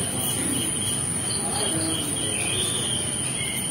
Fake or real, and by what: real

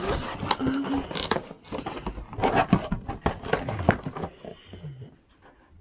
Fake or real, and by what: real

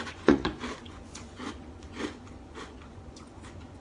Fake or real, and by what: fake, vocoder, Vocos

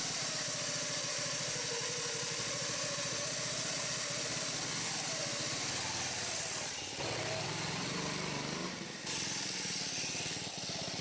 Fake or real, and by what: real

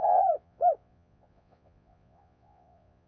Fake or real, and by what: fake, vocoder, Vocos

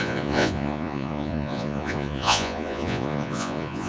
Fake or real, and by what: fake, vocoder, Vocos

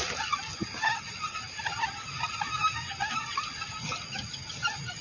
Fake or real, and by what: real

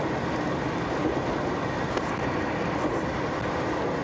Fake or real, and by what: real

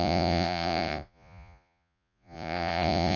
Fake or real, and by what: fake, vocoder, Vocos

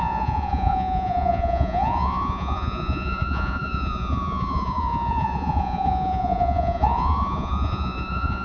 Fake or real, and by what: fake, vocoder, Vocos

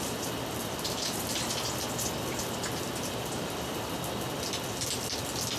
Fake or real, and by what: real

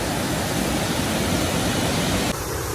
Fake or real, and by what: real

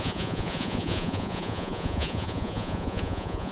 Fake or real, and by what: fake, vocoder, Vocos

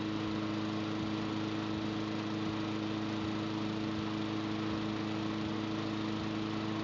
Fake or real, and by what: real